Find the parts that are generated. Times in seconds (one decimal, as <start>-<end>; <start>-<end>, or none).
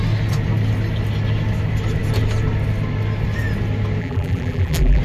4.0-5.0